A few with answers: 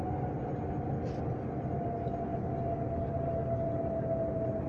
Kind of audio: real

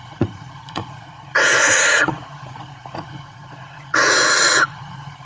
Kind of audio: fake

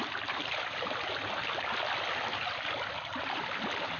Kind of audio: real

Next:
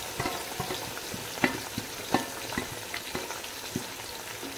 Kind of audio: real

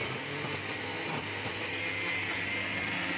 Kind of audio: real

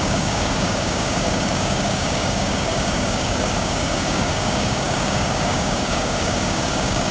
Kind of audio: fake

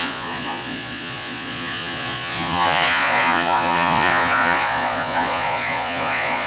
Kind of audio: fake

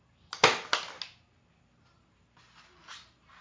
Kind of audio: real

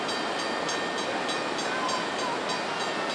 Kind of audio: real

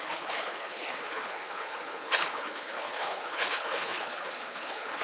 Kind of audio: fake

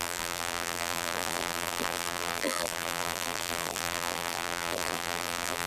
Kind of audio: fake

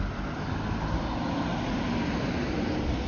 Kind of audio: real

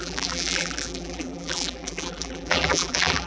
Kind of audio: fake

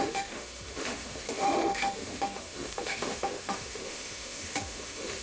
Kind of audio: fake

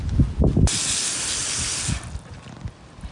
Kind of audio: real